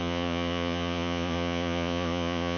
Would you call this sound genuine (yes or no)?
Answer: no